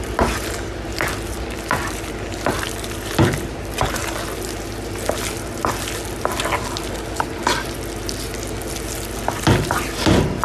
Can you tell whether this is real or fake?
real